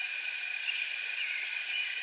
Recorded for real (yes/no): no